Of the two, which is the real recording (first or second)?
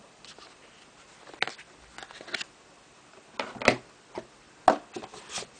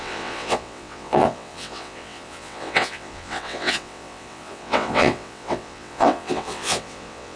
first